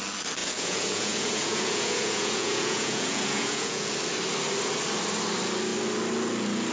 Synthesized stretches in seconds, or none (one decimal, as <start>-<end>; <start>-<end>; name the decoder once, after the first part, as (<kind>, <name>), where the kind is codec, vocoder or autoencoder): 0.4-3.9 (vocoder, Vocos)